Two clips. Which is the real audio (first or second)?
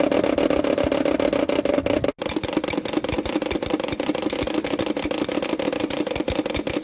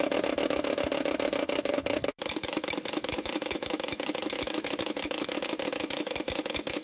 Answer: first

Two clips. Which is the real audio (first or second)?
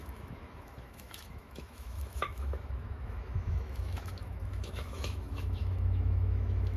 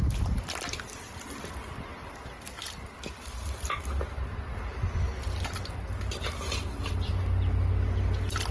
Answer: second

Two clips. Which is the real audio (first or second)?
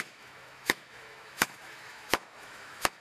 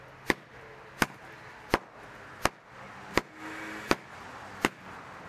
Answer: second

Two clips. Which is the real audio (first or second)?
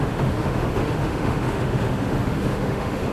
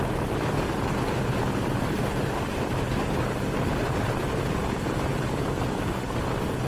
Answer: second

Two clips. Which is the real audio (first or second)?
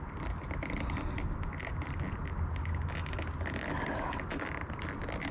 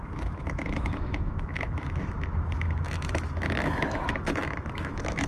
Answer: first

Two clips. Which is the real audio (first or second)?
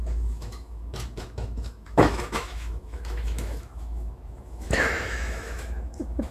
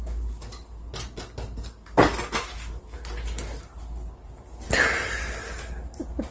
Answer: second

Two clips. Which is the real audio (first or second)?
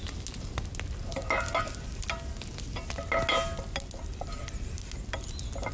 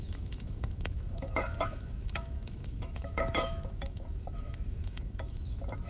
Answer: first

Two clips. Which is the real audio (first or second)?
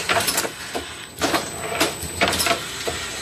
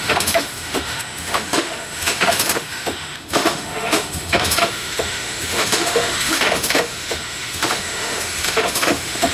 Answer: first